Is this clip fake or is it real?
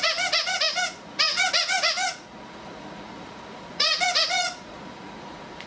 fake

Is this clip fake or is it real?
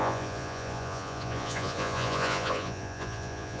fake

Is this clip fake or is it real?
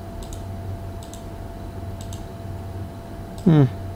real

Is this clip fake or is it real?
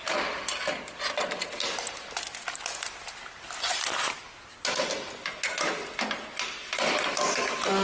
real